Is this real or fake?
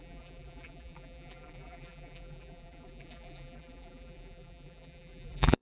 fake